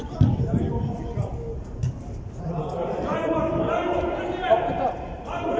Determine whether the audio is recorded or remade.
recorded